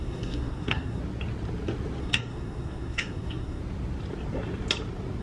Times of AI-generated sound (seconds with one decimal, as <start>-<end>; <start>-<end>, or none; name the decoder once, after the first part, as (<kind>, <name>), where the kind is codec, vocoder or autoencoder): 0.0-1.0 (codec, SNAC); 2.0-3.6